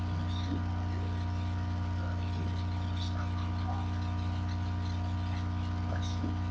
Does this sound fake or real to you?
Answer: real